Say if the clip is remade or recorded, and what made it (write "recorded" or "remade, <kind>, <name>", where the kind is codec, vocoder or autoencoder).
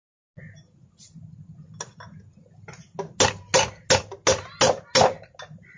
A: recorded